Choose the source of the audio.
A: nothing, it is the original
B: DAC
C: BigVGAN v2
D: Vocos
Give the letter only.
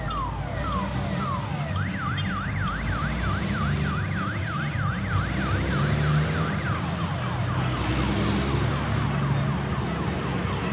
A